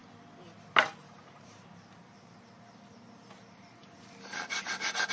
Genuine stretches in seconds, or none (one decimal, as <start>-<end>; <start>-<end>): 0.0-1.0; 3.8-4.5